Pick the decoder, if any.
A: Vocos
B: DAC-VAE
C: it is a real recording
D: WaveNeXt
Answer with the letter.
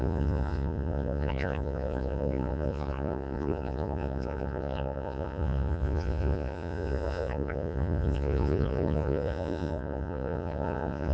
A